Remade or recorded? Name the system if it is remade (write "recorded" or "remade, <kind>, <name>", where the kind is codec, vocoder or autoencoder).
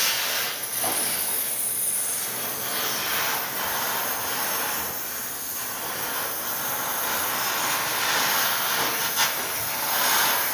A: recorded